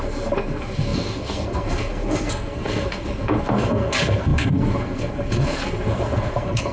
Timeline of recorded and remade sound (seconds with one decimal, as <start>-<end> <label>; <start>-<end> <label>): 0.0-6.7 remade